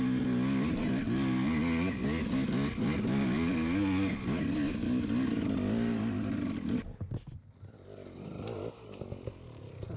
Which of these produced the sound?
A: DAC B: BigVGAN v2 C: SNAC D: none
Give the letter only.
D